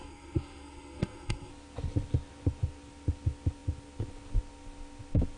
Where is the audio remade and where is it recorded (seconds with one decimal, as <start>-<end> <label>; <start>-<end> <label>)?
0.0-1.5 remade; 1.5-5.4 recorded